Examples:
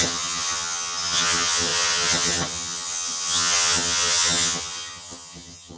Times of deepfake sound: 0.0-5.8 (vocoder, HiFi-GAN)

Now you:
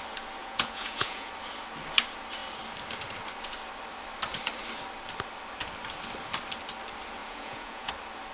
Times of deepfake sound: 0.4-1.3 (vocoder, Vocos); 7.2-7.9

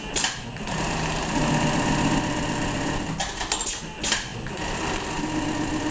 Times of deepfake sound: none

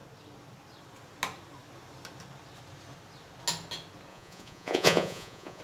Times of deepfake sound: 4.1-5.6 (vocoder, Vocos)

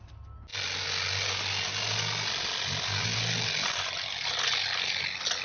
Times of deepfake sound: none

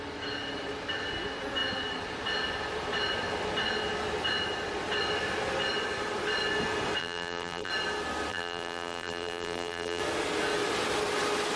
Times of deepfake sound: 7.0-7.7 (vocoder, BigVGAN v2); 8.3-10.0

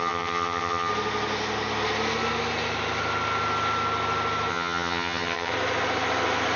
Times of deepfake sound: 0.0-0.9 (vocoder, HiFi-GAN); 4.5-5.5

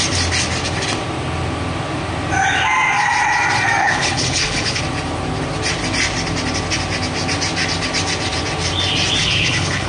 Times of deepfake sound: 3.8-4.8 (codec, HILCodec); 9.2-9.9